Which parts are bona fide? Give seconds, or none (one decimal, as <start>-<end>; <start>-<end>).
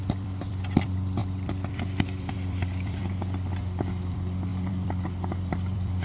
none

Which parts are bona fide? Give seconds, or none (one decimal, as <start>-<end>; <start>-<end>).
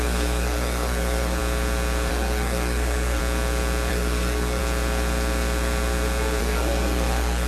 1.4-2.1; 3.2-3.9; 4.6-6.4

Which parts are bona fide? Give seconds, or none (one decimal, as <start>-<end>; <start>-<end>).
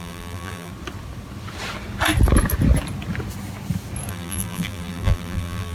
0.7-4.1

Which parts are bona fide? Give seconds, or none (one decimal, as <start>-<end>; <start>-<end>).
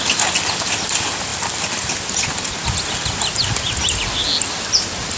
0.0-5.2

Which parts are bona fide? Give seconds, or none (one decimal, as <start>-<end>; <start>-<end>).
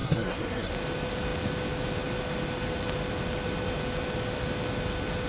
0.7-5.3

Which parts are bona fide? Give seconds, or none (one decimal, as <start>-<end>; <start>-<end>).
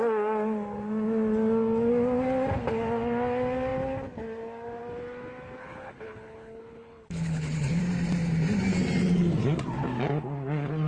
0.0-5.6; 7.8-10.9